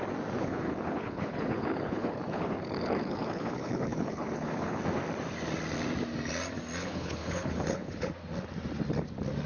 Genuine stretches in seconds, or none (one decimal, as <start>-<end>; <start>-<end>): 0.0-0.4; 4.8-6.8; 8.1-9.5